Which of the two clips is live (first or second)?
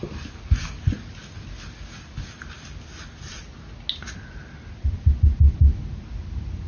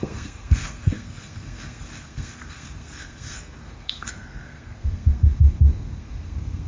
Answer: first